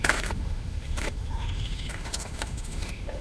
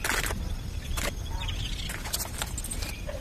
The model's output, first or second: first